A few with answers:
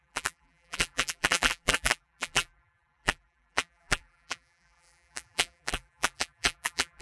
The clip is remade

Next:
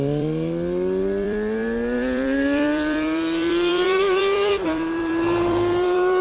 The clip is remade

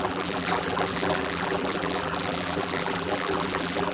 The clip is remade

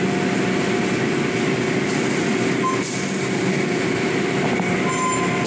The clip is recorded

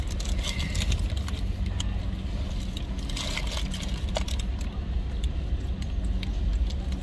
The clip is recorded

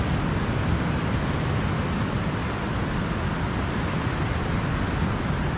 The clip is recorded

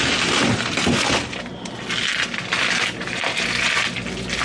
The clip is recorded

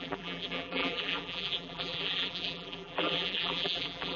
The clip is remade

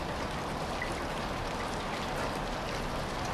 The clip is recorded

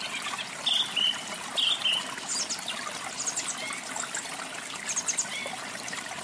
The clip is recorded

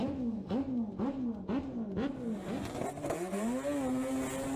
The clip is recorded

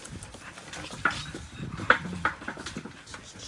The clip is remade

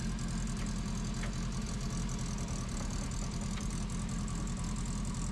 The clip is recorded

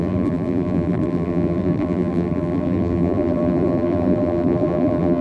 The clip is remade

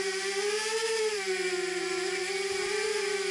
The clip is remade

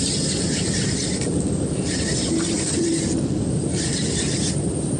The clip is remade